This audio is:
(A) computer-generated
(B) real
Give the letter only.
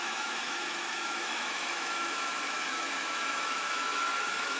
A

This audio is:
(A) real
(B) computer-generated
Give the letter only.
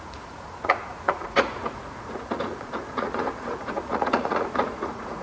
B